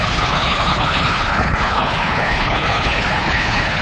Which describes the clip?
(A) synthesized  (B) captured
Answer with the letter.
A